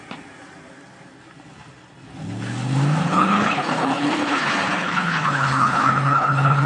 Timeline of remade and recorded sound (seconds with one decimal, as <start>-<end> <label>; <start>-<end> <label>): 0.0-3.0 recorded; 3.0-6.7 remade